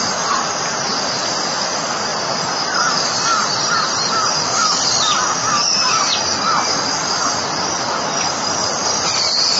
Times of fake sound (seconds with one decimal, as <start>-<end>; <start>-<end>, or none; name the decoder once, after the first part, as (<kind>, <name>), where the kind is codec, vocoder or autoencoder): none